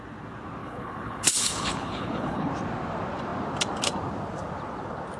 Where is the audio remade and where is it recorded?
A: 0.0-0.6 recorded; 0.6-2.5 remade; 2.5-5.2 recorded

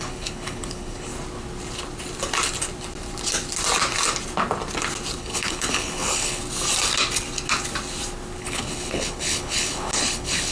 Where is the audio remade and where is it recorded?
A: 0.0-1.1 remade; 1.1-5.2 recorded; 5.2-6.4 remade; 6.4-8.4 recorded; 8.4-10.5 remade

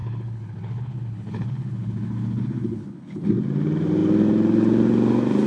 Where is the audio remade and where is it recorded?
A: 0.0-3.3 remade; 3.3-5.5 recorded